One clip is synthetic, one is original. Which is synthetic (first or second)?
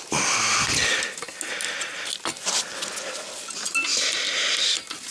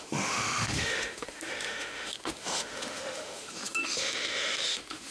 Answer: second